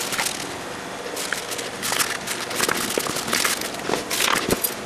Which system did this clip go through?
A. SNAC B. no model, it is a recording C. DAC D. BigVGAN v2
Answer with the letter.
B